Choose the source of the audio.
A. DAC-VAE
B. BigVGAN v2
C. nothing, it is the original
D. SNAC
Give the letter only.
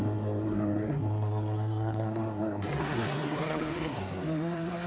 D